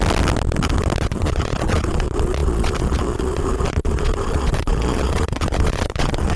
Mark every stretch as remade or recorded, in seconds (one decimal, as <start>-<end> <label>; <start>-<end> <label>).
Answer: 0.0-1.0 recorded; 1.0-6.4 remade